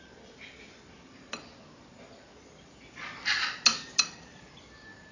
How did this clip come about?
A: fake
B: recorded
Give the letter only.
B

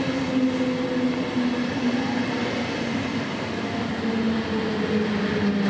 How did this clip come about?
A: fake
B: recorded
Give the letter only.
B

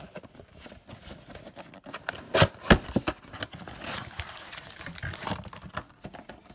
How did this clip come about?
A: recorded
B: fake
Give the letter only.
A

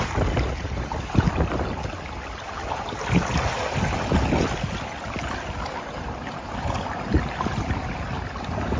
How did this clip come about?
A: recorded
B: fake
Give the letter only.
A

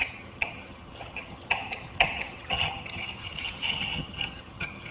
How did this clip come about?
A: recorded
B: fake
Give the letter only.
B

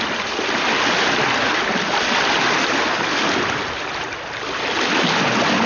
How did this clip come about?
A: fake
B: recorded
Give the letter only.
B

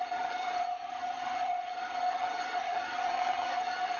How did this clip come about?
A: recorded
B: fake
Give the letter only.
B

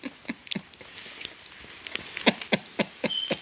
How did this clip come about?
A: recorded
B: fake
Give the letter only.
A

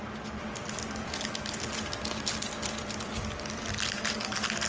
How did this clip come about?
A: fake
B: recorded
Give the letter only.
B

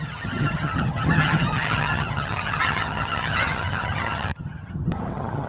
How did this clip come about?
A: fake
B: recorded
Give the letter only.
A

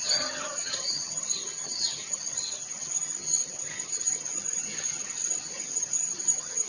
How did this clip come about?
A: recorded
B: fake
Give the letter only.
B